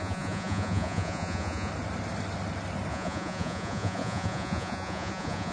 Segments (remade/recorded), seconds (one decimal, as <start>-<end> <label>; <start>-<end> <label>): 0.0-1.7 remade; 1.7-2.9 recorded; 2.9-5.5 remade